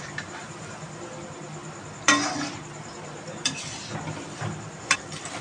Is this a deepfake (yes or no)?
yes